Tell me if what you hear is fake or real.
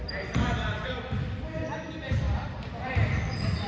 fake